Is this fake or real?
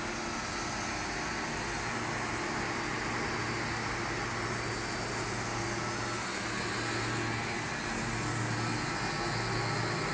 real